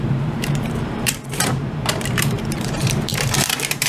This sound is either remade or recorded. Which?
remade